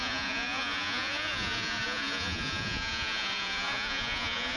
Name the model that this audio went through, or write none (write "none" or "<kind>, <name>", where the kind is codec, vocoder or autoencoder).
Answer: vocoder, Vocos